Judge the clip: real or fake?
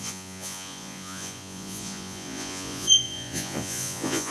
fake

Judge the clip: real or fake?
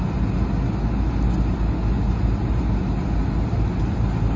real